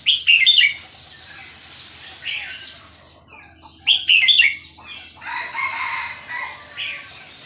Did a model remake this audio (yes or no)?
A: no